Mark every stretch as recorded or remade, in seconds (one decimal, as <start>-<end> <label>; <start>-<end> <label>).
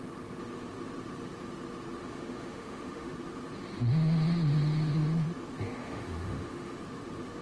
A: 0.0-2.0 recorded; 2.0-3.1 remade; 3.1-5.8 recorded; 5.8-6.8 remade; 6.8-7.4 recorded